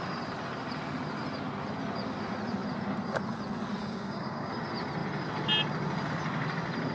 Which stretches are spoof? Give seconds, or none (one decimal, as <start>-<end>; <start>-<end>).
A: 3.8-4.5